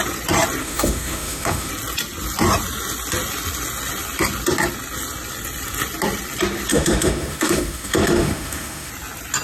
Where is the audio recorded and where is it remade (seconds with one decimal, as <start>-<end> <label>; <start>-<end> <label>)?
0.0-0.6 recorded; 0.6-1.7 remade; 1.7-6.7 recorded; 6.7-8.9 remade; 8.9-9.4 recorded